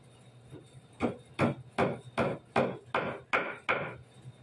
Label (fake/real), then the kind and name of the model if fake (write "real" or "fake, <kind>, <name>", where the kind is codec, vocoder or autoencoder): real